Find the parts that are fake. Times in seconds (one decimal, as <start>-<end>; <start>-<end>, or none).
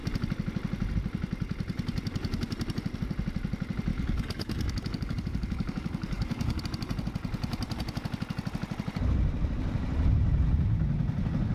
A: 3.9-6.6